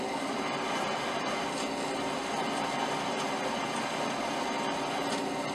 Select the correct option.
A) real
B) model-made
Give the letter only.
A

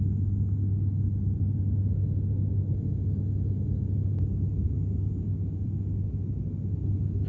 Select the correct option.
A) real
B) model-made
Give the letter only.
A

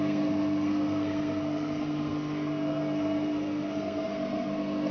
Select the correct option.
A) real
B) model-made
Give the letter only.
B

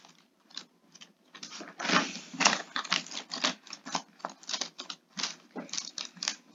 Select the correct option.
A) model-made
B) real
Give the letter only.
B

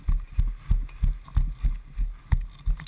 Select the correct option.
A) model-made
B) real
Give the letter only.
B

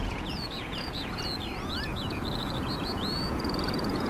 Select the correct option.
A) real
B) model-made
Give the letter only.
B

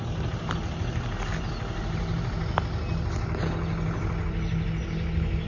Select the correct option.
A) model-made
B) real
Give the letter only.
B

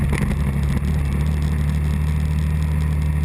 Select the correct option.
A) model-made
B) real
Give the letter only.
B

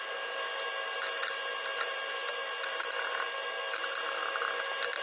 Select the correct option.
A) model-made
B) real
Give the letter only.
B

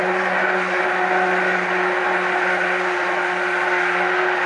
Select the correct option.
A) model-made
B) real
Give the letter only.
B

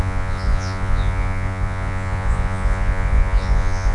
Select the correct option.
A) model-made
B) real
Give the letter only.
A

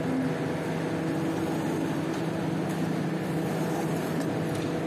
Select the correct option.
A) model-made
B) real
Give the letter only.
B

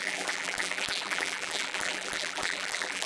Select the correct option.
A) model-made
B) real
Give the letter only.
A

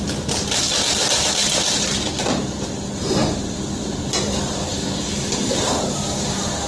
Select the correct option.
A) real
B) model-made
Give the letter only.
B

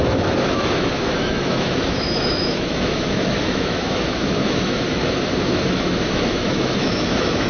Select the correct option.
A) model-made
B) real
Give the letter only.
A